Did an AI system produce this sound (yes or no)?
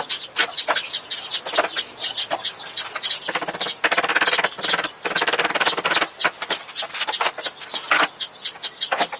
no